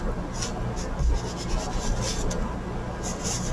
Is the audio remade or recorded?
recorded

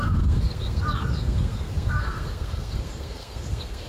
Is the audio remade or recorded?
remade